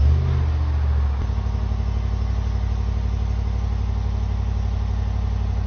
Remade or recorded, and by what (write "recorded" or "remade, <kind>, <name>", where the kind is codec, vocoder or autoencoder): recorded